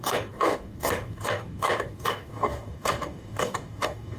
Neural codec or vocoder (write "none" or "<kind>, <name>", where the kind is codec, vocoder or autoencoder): codec, DAC